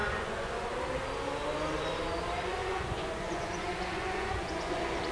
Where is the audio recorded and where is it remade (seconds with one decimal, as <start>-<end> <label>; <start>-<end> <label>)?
0.0-0.7 remade; 0.7-2.6 recorded; 2.6-5.1 remade